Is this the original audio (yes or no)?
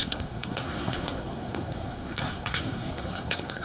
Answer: no